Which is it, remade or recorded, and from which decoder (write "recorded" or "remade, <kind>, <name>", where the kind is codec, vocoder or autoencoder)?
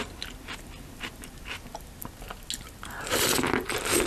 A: recorded